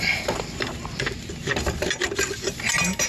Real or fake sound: real